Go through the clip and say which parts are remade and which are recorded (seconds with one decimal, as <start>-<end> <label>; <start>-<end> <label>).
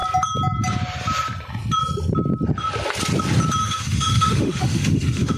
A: 0.0-3.6 recorded; 3.6-5.4 remade